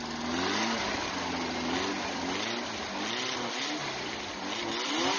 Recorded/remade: recorded